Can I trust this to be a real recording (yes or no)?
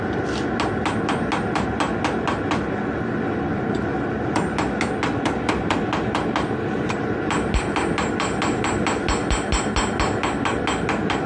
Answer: yes